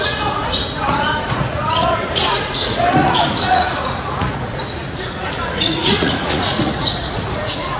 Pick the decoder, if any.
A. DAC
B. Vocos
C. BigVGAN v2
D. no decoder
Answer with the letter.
B